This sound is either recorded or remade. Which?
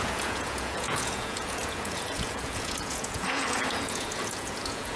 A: remade